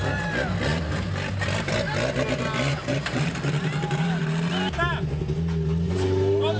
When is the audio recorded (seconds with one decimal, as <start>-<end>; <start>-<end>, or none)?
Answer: 0.0-2.7; 4.2-6.6